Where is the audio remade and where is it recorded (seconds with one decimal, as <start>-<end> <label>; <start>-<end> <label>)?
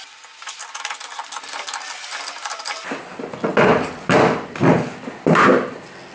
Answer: 0.0-6.1 recorded